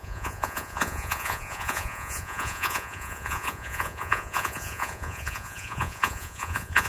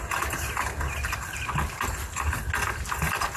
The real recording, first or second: second